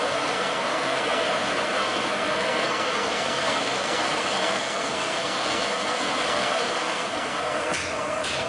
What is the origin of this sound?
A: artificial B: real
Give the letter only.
A